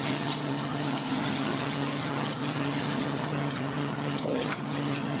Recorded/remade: remade